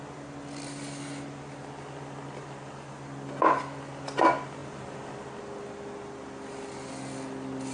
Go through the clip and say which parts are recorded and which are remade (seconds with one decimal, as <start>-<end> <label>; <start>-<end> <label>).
0.0-4.6 recorded; 4.6-5.1 remade; 5.1-7.7 recorded